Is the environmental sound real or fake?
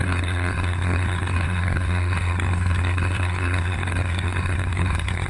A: fake